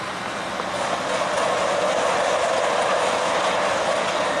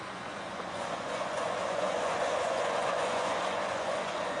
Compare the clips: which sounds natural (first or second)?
first